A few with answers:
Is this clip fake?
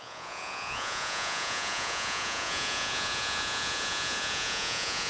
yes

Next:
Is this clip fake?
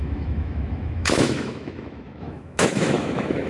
yes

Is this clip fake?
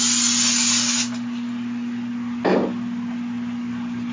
no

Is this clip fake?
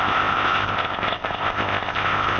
yes